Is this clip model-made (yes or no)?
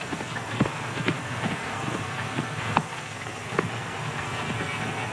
yes